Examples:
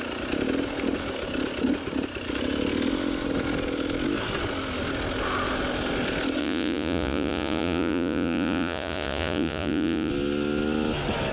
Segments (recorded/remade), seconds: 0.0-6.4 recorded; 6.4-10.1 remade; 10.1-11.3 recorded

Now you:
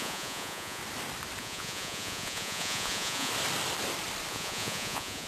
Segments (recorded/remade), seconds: 0.0-0.8 remade; 0.8-1.4 recorded; 1.4-3.3 remade; 3.3-4.3 recorded; 4.3-5.3 remade

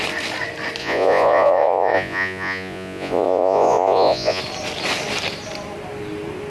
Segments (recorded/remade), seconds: 0.0-0.8 recorded; 0.8-4.4 remade; 4.4-6.5 recorded